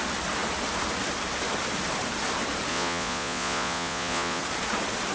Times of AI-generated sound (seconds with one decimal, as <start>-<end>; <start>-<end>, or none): 2.7-4.4